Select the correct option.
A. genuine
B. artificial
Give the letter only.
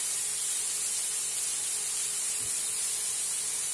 A